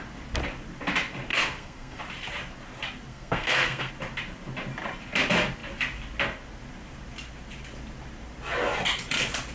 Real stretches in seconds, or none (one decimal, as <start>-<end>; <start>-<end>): 0.0-1.3; 2.0-3.1; 3.9-9.5